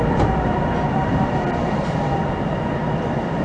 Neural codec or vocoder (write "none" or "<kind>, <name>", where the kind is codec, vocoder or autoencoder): vocoder, BigVGAN v2